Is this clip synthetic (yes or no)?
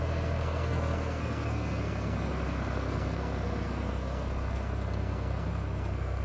yes